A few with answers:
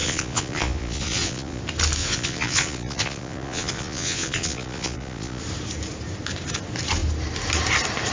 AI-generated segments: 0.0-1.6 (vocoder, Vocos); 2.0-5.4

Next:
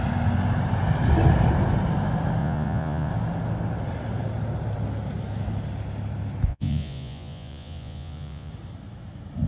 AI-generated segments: 2.4-3.1 (vocoder, Vocos); 6.5-8.5